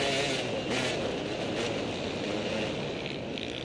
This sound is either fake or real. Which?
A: real